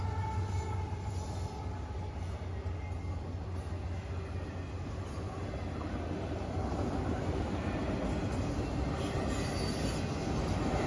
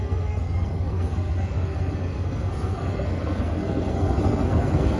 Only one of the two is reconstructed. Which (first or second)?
second